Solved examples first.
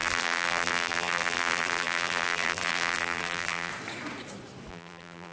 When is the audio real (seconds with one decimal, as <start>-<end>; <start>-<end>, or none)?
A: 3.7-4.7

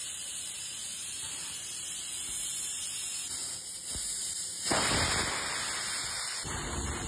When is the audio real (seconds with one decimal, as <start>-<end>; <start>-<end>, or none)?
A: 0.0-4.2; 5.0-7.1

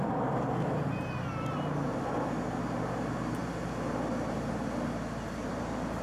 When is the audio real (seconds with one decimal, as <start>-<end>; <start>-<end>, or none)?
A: 0.0-6.0